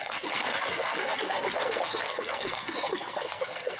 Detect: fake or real fake